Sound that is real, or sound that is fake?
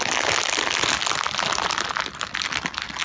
real